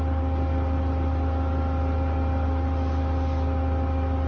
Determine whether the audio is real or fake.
real